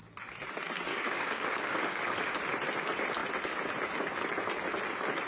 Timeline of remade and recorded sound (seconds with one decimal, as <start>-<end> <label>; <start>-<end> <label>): 0.0-0.9 recorded; 0.9-2.3 remade; 2.3-5.3 recorded